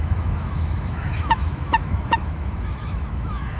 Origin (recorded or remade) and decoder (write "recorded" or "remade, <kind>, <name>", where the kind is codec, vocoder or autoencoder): remade, autoencoder, DAC-VAE